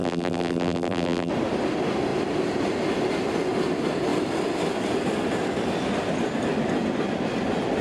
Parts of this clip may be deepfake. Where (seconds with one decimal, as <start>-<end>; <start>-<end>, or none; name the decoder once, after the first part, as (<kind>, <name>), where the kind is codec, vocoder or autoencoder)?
0.0-1.3 (vocoder, BigVGAN v2)